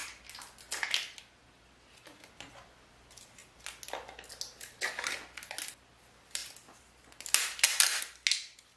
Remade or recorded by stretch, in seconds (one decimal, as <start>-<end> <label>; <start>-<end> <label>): 0.0-8.8 recorded